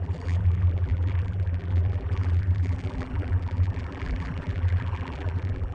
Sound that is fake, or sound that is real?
fake